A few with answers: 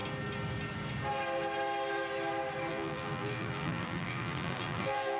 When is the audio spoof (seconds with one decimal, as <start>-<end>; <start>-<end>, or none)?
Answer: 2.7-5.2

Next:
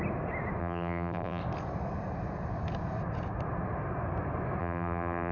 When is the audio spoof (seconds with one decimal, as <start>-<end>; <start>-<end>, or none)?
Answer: 0.6-1.4; 4.6-5.3

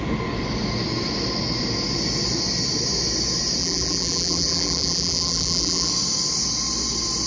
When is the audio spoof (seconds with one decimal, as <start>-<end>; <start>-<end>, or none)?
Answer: 3.6-5.9

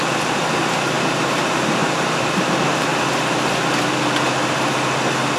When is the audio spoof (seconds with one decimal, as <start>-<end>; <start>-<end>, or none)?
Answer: 0.0-2.9